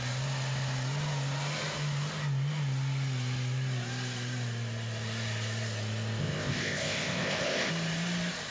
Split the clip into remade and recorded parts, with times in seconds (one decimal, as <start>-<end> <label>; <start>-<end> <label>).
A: 0.0-6.2 recorded; 6.2-7.7 remade; 7.7-8.5 recorded